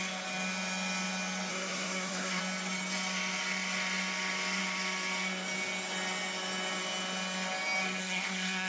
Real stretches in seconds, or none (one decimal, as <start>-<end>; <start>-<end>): 0.0-1.5; 2.4-8.0